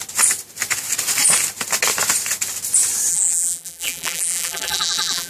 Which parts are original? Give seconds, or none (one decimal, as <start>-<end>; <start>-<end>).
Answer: 0.0-3.1